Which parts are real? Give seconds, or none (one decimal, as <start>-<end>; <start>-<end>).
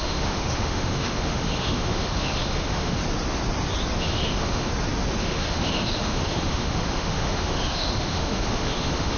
3.0-4.0; 4.7-5.2